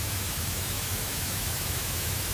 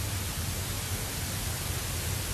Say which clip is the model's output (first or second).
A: first